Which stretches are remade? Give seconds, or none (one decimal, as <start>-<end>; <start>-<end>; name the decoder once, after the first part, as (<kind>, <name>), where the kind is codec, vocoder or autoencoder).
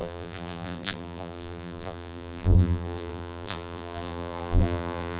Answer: 0.0-5.2 (vocoder, BigVGAN v2)